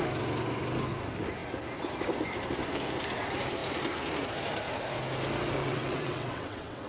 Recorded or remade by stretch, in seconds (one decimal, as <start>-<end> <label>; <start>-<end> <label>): 0.0-5.6 recorded; 5.6-6.9 remade